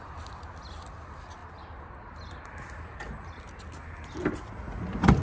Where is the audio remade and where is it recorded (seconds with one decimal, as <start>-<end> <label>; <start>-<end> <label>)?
0.0-5.2 recorded